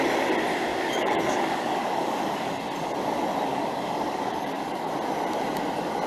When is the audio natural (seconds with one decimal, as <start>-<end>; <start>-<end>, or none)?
0.0-0.7; 2.6-3.5; 4.9-6.1